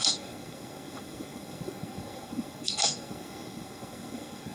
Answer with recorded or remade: remade